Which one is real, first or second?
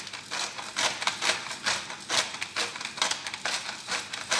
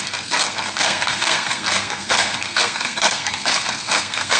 first